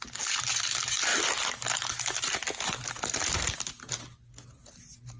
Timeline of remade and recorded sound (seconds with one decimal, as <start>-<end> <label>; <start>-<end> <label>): 0.0-5.2 recorded